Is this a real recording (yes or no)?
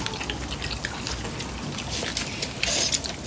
yes